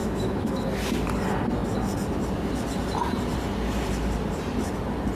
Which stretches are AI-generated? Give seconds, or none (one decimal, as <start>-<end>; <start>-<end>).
0.0-0.5